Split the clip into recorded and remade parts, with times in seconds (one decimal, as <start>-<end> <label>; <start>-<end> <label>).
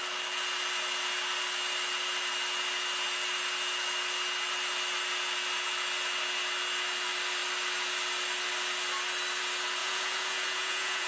0.0-9.8 recorded; 9.8-11.1 remade